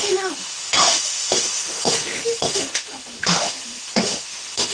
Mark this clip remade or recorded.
remade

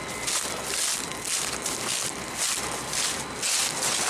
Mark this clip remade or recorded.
recorded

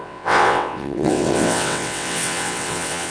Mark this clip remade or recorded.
remade